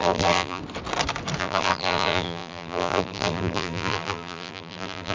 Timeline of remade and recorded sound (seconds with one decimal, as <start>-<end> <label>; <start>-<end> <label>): 0.0-0.6 remade; 0.6-1.4 recorded; 1.4-5.1 remade